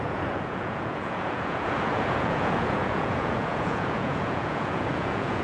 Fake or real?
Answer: fake